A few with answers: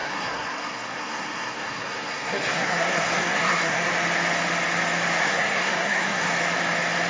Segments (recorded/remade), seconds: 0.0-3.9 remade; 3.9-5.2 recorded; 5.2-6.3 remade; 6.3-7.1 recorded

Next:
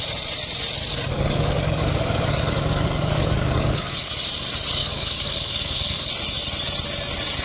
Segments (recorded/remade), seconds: 0.0-0.9 recorded; 0.9-4.1 remade; 4.1-4.8 recorded; 4.8-6.1 remade; 6.1-7.4 recorded

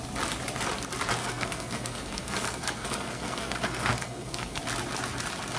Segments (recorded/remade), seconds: 0.0-1.2 recorded; 1.2-4.6 remade; 4.6-5.6 recorded

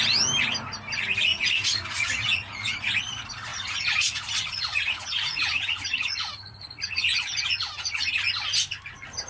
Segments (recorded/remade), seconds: 0.0-1.3 recorded; 1.3-3.0 remade; 3.0-3.5 recorded; 3.5-8.1 remade; 8.1-9.3 recorded

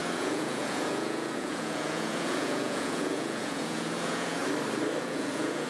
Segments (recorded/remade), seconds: 0.0-4.4 remade; 4.4-5.0 recorded; 5.0-5.7 remade

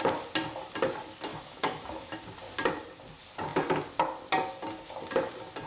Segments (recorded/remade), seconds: 0.0-1.3 recorded; 1.3-2.2 remade; 2.2-5.7 recorded